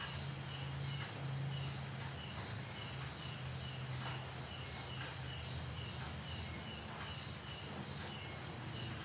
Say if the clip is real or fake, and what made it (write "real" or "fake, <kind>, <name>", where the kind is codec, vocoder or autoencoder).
real